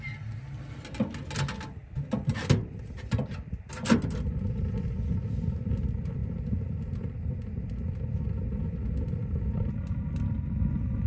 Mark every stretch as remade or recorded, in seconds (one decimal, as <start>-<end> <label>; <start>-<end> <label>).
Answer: 0.0-11.1 recorded